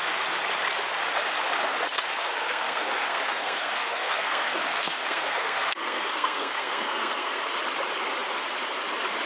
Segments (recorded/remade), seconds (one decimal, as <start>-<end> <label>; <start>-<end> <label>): 0.0-2.3 recorded; 2.3-7.4 remade; 7.4-9.3 recorded